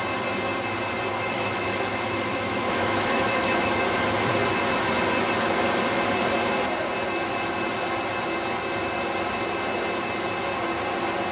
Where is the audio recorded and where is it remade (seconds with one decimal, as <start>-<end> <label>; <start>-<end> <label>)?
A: 0.0-1.1 recorded; 1.1-4.3 remade; 4.3-11.3 recorded